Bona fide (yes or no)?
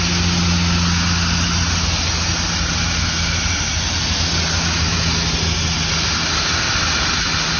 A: yes